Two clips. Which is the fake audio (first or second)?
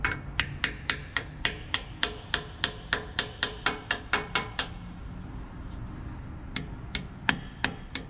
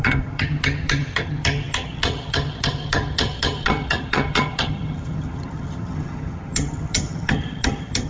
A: second